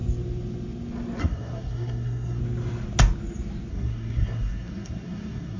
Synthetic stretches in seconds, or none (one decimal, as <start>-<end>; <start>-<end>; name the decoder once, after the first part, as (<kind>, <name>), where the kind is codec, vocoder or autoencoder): 1.2-2.4 (codec, SNAC); 3.7-5.6